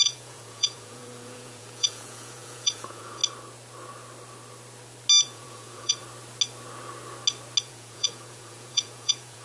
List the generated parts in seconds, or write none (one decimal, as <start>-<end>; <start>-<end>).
0.0-3.2; 5.2-6.0; 7.6-9.4